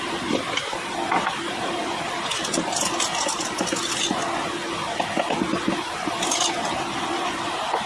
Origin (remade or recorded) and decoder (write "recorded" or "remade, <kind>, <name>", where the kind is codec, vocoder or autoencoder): recorded